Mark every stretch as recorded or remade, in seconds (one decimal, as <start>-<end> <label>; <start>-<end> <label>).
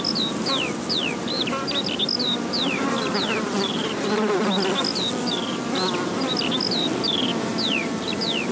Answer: 0.0-8.5 recorded